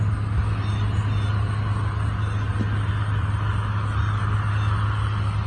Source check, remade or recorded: recorded